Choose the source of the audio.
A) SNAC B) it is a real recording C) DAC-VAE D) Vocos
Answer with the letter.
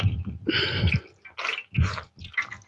B